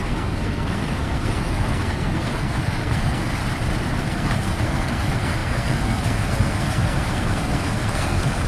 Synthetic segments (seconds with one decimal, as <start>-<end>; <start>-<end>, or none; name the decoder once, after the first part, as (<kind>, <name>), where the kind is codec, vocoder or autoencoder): 0.0-3.4 (codec, SNAC); 4.0-8.5